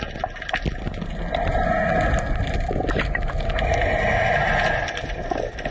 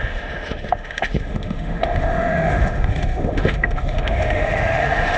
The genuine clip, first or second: first